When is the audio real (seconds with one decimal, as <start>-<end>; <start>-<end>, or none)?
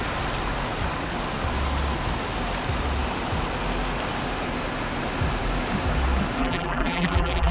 0.0-6.4